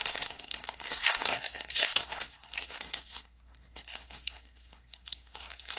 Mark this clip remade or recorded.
remade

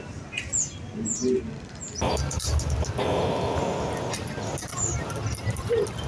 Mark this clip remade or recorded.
recorded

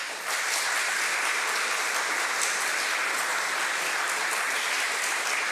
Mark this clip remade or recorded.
recorded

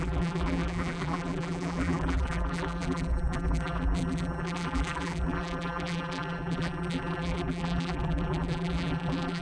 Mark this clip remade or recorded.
remade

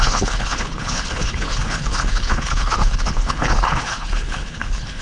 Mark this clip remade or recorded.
remade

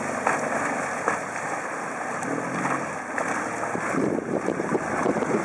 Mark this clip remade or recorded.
recorded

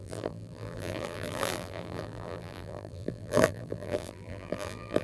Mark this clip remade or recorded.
remade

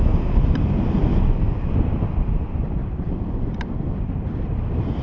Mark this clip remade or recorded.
recorded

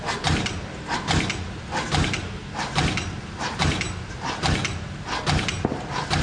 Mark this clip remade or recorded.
remade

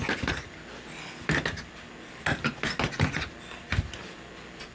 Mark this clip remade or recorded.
recorded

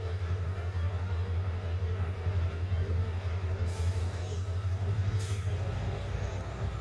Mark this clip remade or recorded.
remade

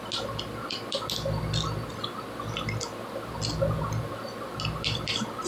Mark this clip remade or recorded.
recorded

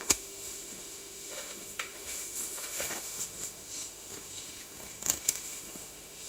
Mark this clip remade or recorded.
remade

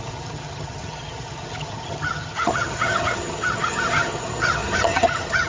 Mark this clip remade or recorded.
remade